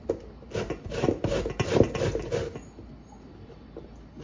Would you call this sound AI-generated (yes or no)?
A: no